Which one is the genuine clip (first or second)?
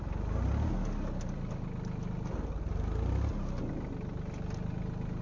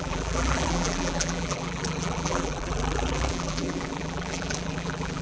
first